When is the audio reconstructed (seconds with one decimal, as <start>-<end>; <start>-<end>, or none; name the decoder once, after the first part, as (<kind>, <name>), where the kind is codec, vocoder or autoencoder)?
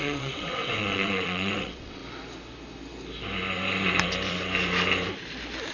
0.0-2.0 (vocoder, WaveNeXt)